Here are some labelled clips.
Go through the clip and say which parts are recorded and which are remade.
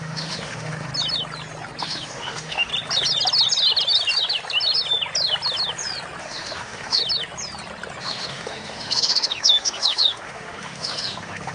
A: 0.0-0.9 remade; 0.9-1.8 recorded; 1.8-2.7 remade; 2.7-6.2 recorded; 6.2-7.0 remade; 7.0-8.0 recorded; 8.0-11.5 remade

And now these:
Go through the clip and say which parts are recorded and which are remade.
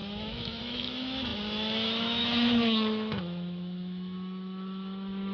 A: 0.0-5.3 remade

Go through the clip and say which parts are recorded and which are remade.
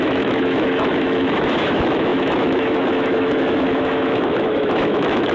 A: 0.0-5.3 remade